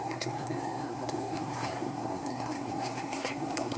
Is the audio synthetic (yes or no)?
yes